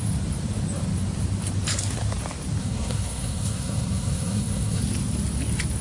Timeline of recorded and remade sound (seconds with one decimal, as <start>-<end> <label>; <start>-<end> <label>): 0.0-2.6 recorded; 2.6-4.8 remade; 4.8-5.8 recorded